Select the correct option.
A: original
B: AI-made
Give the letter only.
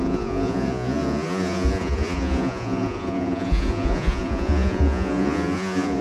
B